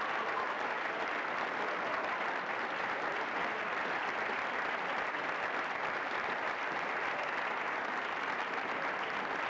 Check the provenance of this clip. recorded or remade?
recorded